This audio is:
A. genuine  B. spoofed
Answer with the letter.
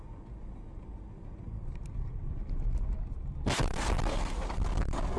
A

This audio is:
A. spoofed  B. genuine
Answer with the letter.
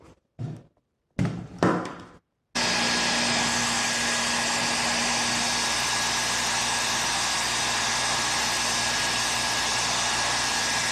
B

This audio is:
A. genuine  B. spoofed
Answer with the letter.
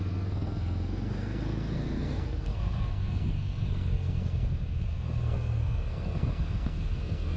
B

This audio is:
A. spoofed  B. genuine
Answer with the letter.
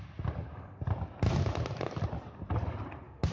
B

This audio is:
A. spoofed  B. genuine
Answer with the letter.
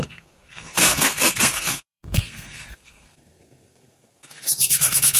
A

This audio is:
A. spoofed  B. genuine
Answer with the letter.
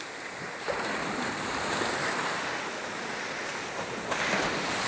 B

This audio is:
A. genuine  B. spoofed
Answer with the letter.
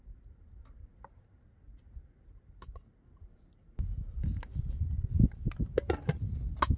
A